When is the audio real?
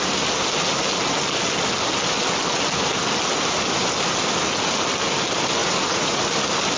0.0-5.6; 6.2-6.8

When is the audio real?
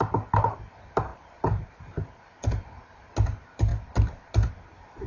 0.0-1.1; 3.1-5.1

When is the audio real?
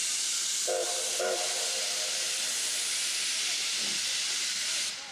0.0-5.1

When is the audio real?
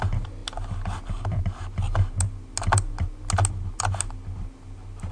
0.0-5.1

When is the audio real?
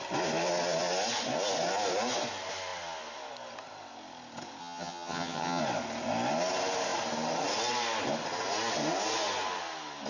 0.0-4.6; 5.6-10.1